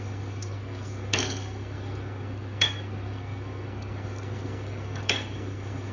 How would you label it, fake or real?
fake